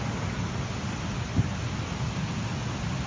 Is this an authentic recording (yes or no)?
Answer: yes